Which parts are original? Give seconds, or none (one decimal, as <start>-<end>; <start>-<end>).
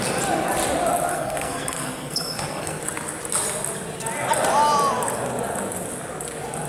0.0-1.1; 2.8-6.7